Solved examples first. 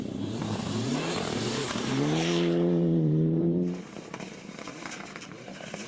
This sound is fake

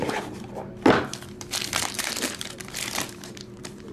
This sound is fake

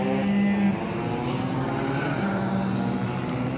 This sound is real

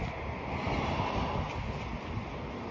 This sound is real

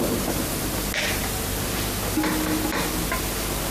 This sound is real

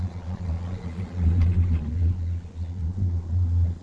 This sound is fake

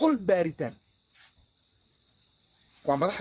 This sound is fake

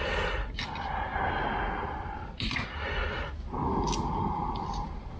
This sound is real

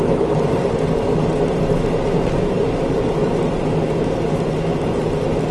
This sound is real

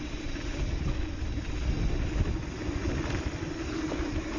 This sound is real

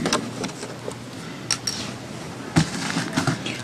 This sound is real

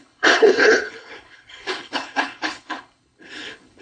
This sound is fake